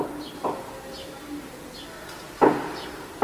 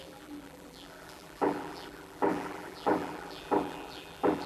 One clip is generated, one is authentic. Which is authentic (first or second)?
first